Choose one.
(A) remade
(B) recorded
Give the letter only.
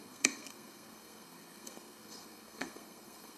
A